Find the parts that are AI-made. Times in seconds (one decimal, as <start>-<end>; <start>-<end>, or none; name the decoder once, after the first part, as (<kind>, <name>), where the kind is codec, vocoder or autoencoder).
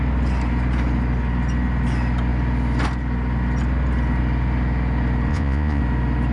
5.3-5.8 (vocoder, Vocos)